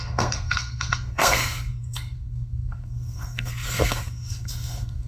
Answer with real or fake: fake